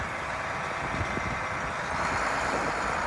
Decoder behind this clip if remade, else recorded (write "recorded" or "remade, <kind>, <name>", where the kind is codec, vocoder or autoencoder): remade, vocoder, BigVGAN v2